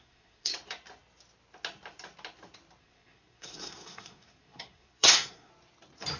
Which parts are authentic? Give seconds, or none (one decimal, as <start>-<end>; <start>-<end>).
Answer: 0.5-2.8; 5.5-6.2